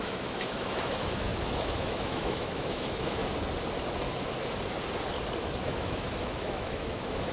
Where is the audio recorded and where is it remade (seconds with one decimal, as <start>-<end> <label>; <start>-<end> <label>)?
0.0-3.2 remade; 3.2-5.4 recorded; 5.4-7.3 remade